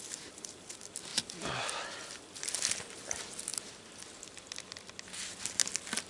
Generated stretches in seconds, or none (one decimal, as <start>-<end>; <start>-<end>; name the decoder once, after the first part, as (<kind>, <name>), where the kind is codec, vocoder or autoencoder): none